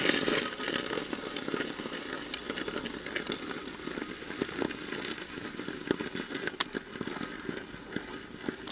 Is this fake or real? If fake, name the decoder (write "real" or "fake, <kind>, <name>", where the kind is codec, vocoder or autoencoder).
real